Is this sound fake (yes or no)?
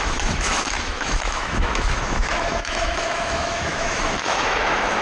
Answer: yes